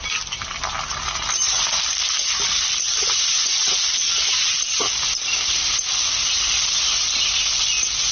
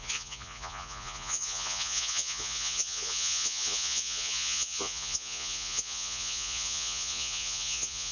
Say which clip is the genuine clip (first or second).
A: first